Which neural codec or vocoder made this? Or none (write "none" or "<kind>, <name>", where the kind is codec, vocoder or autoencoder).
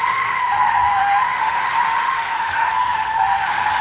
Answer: autoencoder, DAC-VAE